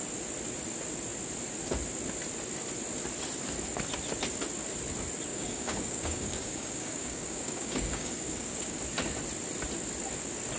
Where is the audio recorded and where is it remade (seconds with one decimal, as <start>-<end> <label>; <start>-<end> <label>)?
0.0-5.3 recorded; 5.3-8.8 remade; 8.8-10.6 recorded